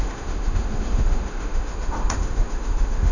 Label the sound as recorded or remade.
remade